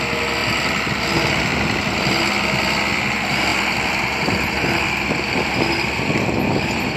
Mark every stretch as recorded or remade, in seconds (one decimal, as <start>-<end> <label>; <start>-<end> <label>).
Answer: 0.0-0.4 recorded; 0.4-1.0 remade; 1.0-1.5 recorded; 1.5-2.2 remade; 2.2-3.5 recorded; 3.5-5.5 remade; 5.5-7.0 recorded